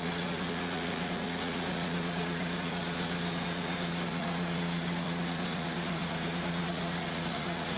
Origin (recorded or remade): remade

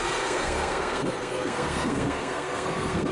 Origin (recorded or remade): remade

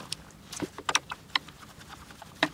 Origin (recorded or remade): recorded